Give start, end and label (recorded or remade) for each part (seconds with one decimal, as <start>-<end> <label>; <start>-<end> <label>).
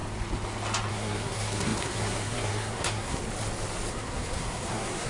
0.0-0.9 recorded; 0.9-3.2 remade; 3.2-3.9 recorded; 3.9-5.1 remade